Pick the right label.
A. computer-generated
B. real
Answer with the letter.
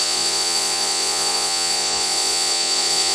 A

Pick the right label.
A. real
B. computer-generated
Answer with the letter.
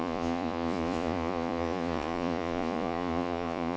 B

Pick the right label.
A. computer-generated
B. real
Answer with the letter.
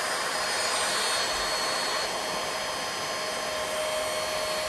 B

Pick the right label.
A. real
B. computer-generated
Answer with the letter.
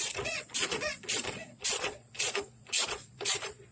B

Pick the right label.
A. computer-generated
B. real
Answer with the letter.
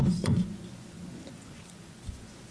A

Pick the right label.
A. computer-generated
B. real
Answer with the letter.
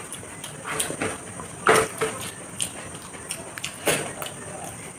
B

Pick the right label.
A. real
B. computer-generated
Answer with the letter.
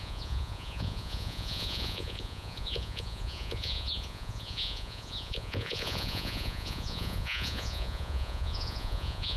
B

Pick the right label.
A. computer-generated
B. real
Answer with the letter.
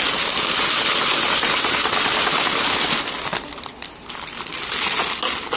B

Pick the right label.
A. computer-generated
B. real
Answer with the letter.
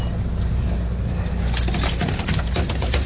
B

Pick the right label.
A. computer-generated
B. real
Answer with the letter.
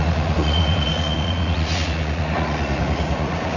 A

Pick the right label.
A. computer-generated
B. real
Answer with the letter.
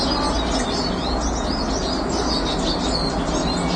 B